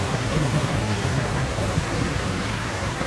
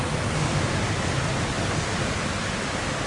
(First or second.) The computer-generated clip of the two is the first